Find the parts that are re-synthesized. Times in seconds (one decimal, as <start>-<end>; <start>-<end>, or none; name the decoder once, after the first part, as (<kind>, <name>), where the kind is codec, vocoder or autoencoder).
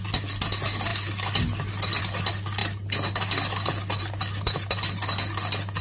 none